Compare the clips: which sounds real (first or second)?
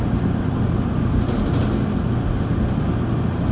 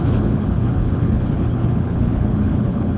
first